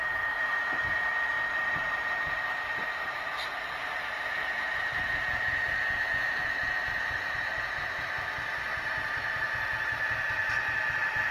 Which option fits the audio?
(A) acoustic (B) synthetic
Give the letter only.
B